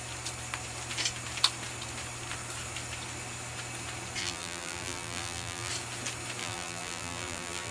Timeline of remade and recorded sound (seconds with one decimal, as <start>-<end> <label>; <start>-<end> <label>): 0.0-4.2 recorded; 4.2-5.7 remade; 5.7-6.4 recorded; 6.4-7.7 remade